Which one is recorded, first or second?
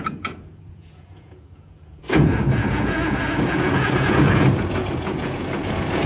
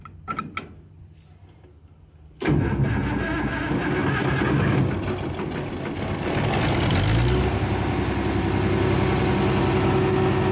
second